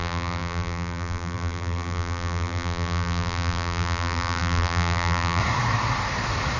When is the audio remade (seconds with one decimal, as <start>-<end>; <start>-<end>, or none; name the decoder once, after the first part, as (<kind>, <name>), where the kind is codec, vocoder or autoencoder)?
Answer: 0.0-5.4 (vocoder, BigVGAN v2)